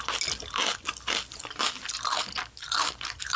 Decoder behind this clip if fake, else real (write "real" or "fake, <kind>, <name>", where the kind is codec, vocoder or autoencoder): real